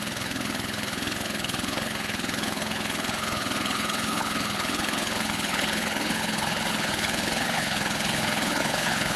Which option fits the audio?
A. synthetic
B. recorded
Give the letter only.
A